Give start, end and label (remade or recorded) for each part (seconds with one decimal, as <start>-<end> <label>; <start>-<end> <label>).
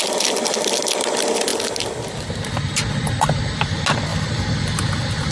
0.0-5.3 recorded